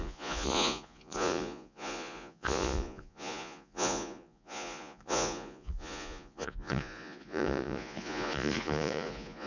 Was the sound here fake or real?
fake